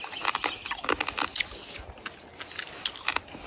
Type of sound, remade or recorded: recorded